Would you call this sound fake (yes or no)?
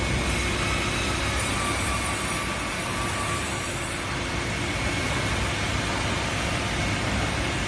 no